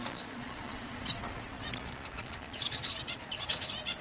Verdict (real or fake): fake